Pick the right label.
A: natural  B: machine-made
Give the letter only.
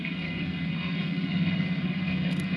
B